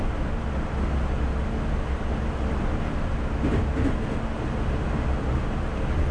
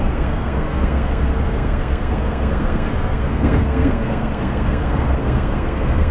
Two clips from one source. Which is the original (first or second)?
first